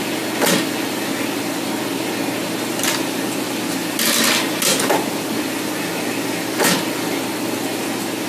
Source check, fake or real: real